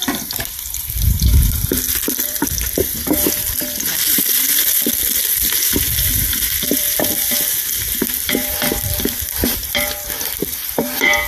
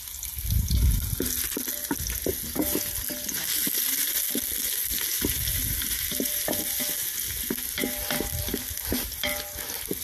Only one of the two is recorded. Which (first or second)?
second